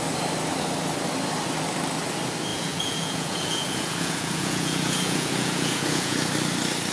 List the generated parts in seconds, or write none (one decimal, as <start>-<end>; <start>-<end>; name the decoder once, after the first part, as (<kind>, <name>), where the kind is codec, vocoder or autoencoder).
2.5-6.3 (vocoder, Vocos)